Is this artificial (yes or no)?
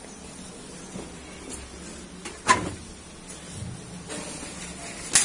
no